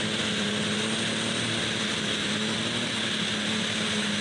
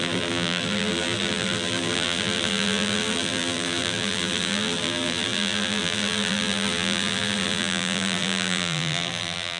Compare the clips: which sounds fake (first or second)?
second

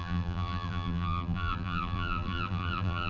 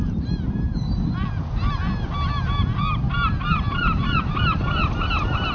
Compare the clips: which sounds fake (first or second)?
first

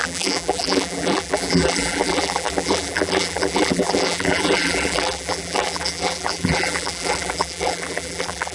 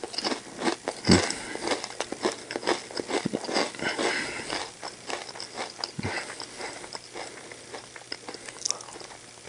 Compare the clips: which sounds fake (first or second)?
first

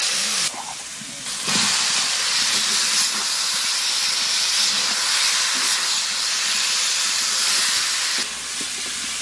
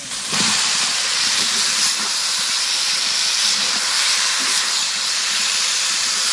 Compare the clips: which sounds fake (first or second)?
second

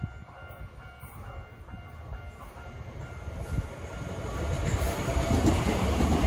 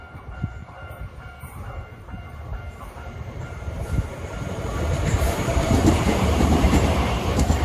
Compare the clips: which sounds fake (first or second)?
second